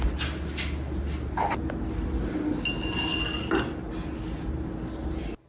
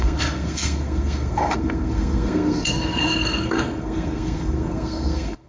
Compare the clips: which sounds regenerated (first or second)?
second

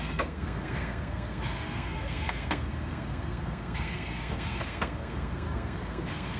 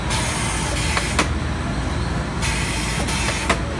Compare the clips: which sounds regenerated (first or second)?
first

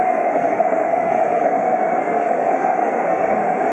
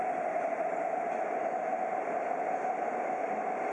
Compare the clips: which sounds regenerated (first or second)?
first